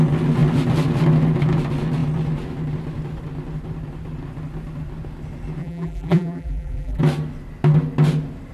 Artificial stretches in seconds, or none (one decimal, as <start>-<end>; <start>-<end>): 5.6-7.0